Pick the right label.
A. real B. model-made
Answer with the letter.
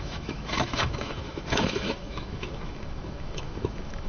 B